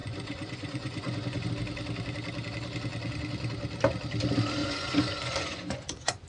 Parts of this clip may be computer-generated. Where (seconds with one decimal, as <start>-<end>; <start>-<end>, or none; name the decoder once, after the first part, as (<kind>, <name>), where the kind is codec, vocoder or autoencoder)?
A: 0.0-1.5 (vocoder, Vocos); 4.6-6.3